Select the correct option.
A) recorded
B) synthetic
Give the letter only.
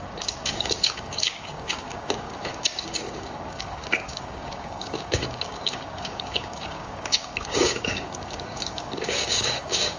B